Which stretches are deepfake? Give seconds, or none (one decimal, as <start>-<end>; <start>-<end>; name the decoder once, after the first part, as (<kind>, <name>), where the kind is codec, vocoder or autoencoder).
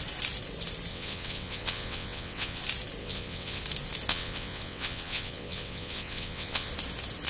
0.9-2.6 (vocoder, WaveNeXt); 3.0-3.6; 4.1-6.7